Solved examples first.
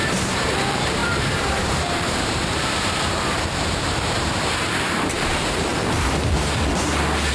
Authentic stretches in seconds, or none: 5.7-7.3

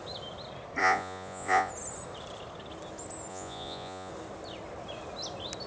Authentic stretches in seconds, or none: 0.0-0.8; 1.7-3.3; 4.1-5.7

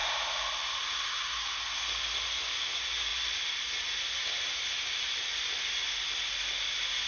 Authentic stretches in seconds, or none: 0.7-7.1

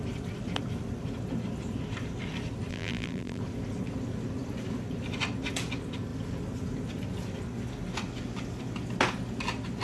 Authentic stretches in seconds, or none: 0.0-2.7; 3.4-9.8

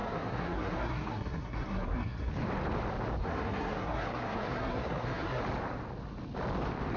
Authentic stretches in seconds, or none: 2.3-3.2; 5.4-7.0